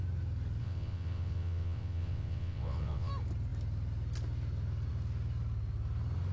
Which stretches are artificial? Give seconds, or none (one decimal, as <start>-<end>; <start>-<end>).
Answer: 0.6-3.1